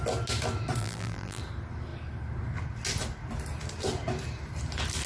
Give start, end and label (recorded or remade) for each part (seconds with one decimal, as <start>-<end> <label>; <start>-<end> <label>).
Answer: 0.0-0.8 recorded; 0.8-1.4 remade; 1.4-5.1 recorded